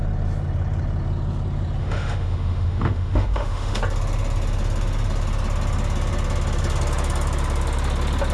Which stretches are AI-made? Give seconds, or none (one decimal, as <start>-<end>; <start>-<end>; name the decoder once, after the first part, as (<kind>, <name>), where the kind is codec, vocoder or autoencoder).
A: 1.8-3.8 (autoencoder, DAC-VAE)